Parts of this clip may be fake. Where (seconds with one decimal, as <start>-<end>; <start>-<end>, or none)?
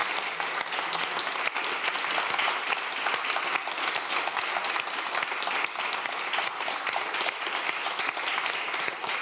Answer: none